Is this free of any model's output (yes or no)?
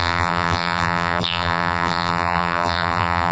no